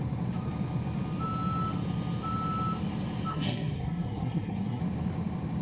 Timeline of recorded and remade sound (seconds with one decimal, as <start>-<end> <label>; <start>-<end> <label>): 0.0-3.3 recorded; 3.3-4.8 remade; 4.8-5.6 recorded